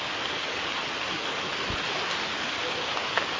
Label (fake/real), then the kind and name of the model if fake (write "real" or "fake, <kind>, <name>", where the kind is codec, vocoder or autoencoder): real